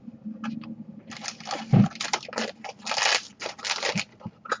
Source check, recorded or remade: recorded